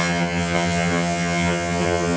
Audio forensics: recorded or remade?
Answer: remade